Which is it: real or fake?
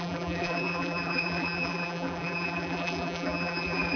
fake